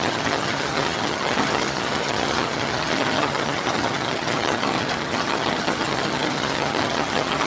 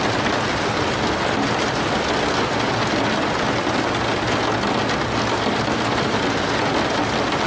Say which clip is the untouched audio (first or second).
second